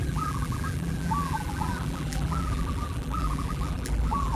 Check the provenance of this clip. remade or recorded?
remade